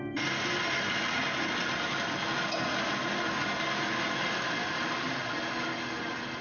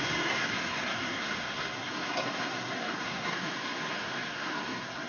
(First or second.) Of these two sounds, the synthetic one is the second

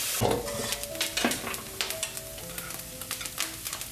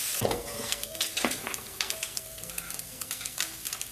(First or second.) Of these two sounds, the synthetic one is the second